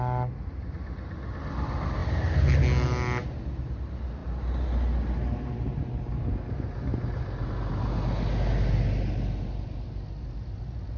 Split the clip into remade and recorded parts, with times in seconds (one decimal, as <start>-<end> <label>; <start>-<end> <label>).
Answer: 0.0-11.0 recorded